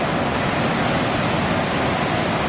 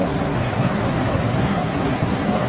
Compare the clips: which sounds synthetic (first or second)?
second